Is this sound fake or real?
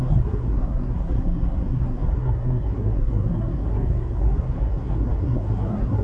fake